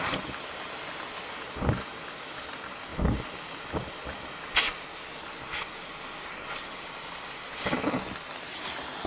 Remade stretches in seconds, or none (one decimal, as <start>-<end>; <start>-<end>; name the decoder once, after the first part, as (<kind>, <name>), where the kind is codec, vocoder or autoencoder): none